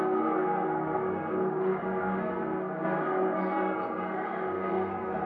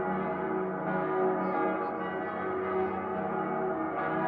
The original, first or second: second